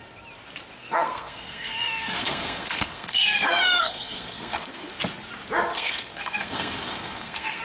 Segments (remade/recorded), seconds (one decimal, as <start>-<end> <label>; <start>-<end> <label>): 0.0-0.8 recorded; 0.8-5.0 remade; 5.0-5.7 recorded; 5.7-7.6 remade